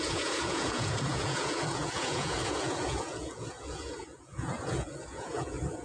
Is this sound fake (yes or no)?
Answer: yes